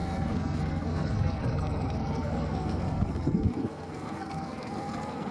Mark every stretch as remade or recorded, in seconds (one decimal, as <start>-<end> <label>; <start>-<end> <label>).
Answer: 0.0-5.3 remade